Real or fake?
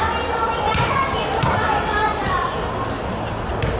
real